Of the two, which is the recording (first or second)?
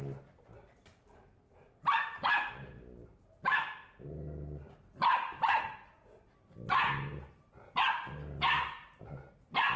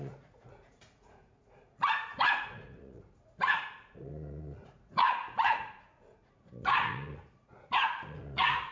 first